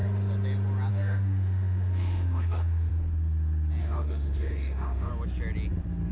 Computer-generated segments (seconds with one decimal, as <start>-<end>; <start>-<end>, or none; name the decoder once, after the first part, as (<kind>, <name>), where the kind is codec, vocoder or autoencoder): 0.9-2.9 (autoencoder, DAC-VAE); 3.8-5.1